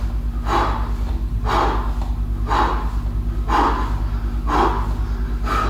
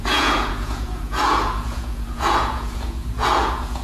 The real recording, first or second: first